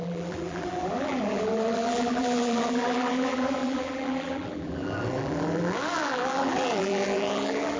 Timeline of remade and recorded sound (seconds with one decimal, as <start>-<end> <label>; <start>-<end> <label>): 0.0-7.8 remade